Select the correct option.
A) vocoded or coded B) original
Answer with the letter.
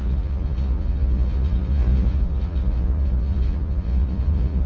A